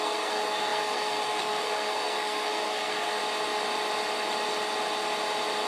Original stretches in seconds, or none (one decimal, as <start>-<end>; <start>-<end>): 3.2-5.7